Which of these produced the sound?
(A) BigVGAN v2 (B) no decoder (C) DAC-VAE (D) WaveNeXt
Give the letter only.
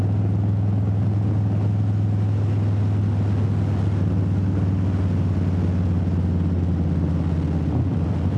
B